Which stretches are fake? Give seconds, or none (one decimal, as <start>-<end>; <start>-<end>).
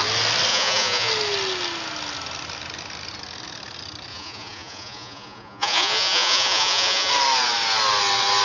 0.5-1.1; 4.1-7.1